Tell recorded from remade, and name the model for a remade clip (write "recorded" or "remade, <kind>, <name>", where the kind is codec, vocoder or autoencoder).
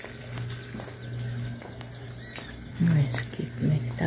recorded